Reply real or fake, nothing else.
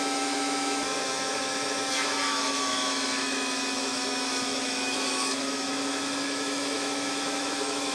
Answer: fake